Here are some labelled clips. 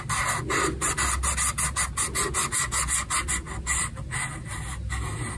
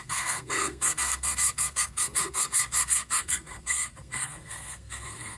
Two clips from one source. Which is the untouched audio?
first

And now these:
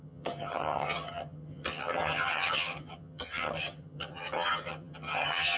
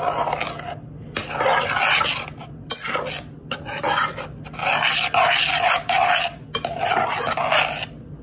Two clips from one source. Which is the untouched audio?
second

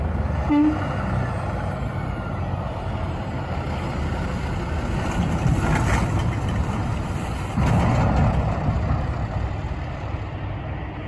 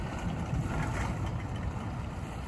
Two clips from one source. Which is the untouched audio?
first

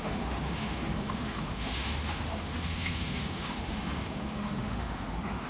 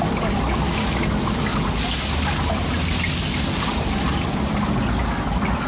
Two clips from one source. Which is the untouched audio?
second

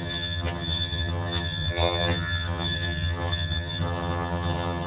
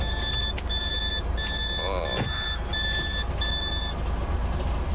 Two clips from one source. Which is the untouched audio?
second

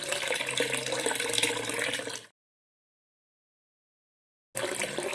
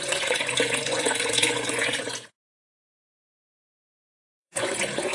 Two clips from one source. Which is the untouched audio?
first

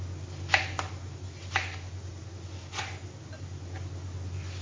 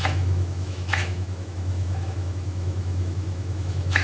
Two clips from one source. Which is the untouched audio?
first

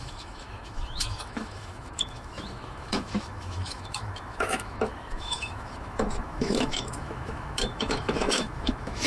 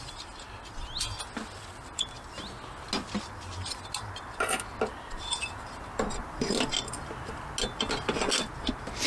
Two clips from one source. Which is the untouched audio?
second